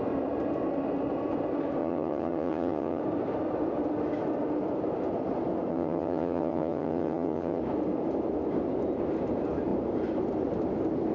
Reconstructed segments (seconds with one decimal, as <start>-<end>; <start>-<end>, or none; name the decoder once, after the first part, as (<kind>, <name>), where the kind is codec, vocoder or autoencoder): 1.8-3.0 (vocoder, HiFi-GAN); 5.7-7.6